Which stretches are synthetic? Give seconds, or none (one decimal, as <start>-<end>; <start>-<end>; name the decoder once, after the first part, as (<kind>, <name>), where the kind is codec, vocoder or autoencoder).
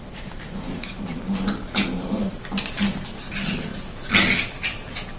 0.0-2.4 (vocoder, BigVGAN v2)